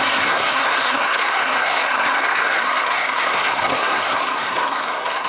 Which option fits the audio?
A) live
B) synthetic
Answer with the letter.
B